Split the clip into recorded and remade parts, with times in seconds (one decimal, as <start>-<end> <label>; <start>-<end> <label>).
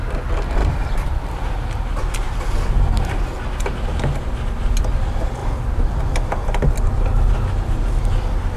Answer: 0.0-0.6 recorded; 0.6-1.3 remade; 1.3-8.6 recorded